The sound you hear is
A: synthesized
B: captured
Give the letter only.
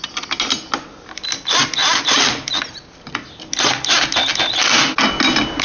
B